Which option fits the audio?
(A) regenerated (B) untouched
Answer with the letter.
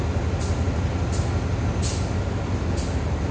B